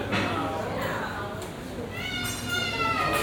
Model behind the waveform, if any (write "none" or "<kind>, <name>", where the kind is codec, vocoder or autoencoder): none